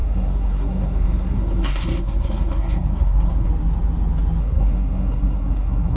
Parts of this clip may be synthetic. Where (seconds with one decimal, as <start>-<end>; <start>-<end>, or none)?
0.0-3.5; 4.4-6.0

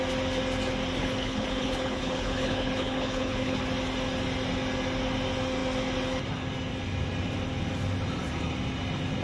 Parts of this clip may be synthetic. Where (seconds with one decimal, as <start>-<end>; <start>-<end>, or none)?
1.0-3.6

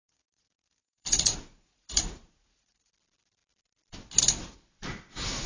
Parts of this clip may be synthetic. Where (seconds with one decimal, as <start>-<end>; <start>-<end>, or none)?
0.0-2.9